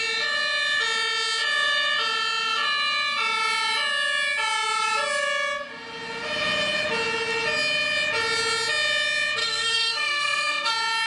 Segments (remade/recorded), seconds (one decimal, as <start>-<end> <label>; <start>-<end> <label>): 0.0-9.4 recorded; 9.4-10.7 remade; 10.7-11.1 recorded